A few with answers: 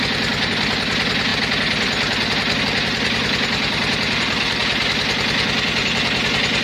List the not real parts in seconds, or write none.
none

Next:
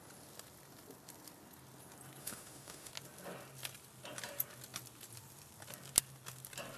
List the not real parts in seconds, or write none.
2.2-2.9 (autoencoder, DAC-VAE)

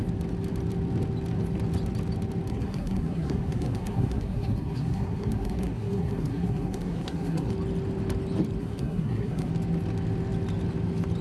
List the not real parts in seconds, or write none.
2.5-7.5 (codec, SNAC); 8.6-9.5

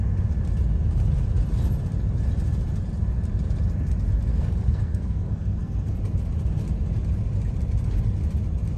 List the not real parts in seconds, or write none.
4.3-6.0 (codec, SNAC)

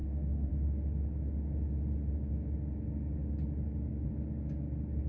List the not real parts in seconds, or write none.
0.0-0.5 (codec, SNAC)

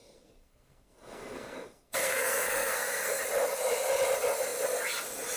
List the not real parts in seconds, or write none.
0.0-3.2 (codec, SNAC)

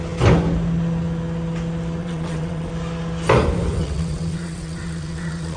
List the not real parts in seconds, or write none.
2.0-2.7 (vocoder, WaveNeXt); 3.8-5.6

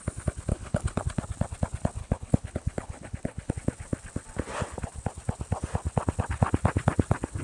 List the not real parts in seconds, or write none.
0.5-1.0 (codec, HILCodec); 2.0-3.5